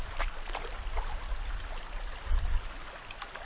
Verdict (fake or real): real